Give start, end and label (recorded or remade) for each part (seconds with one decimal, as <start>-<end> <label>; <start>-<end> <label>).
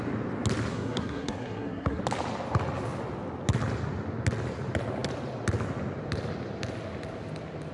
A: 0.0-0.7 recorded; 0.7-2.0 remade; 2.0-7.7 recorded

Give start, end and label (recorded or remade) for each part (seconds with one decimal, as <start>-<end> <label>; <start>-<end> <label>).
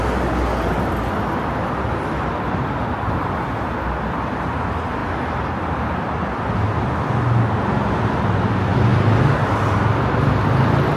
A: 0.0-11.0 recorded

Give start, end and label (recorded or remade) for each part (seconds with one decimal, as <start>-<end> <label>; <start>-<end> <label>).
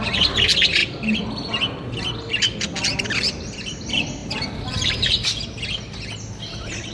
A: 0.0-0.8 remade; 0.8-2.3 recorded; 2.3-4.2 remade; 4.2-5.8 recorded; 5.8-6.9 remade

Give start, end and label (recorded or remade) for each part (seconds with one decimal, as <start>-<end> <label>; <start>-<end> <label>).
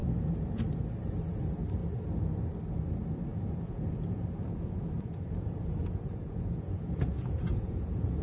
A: 0.0-0.6 remade; 0.6-3.3 recorded; 3.3-8.2 remade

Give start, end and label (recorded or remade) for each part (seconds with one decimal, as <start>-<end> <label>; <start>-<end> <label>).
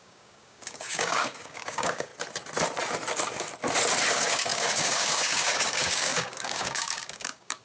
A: 0.0-2.1 remade; 2.1-4.1 recorded; 4.1-7.6 remade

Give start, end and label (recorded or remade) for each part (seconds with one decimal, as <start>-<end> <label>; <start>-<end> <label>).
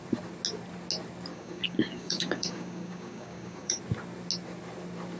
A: 0.0-1.3 recorded; 1.3-3.8 remade; 3.8-5.2 recorded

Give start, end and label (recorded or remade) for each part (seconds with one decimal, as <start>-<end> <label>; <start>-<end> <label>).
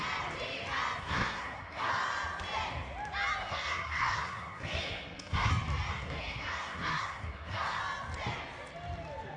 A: 0.0-1.0 recorded; 1.0-1.9 remade; 1.9-3.4 recorded; 3.4-5.5 remade; 5.5-5.9 recorded; 5.9-7.8 remade; 7.8-9.4 recorded